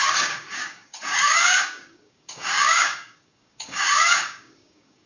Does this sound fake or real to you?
fake